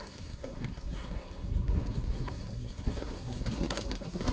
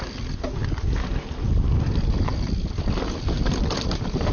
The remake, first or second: first